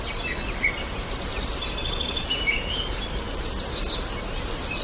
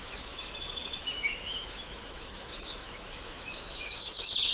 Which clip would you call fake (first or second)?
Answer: second